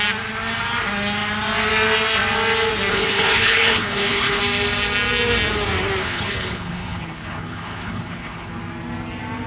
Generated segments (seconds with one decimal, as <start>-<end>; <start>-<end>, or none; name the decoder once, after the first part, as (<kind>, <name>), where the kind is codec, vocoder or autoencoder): 2.9-4.4 (codec, HILCodec); 6.0-8.5